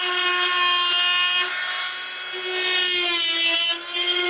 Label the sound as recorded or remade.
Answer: recorded